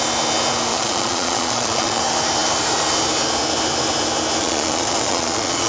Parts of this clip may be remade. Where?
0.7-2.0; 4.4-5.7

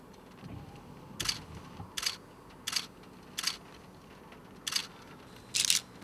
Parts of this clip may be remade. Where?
none

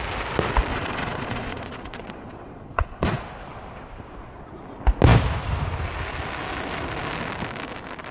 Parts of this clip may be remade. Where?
0.7-3.2

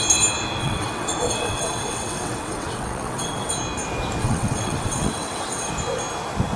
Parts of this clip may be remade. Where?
0.6-3.5; 4.2-5.7

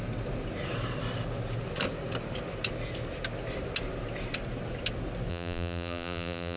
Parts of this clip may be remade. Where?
5.3-6.6

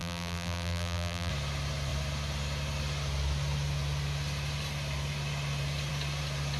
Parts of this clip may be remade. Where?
0.0-1.3

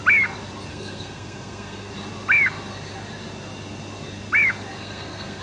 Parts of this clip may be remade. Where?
0.7-1.9; 4.8-5.4